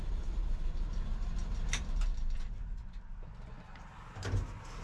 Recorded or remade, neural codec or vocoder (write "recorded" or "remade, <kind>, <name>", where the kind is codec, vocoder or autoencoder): recorded